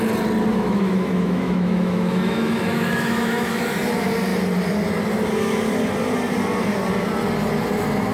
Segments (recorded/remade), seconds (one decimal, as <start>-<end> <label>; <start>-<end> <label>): 0.0-0.5 recorded; 0.5-3.6 remade; 3.6-8.1 recorded